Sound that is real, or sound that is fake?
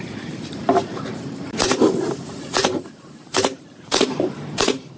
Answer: fake